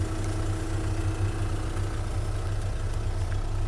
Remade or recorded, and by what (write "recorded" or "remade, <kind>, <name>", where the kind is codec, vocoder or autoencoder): recorded